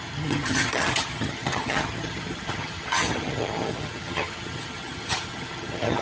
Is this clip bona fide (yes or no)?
no